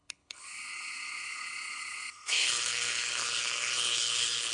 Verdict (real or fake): fake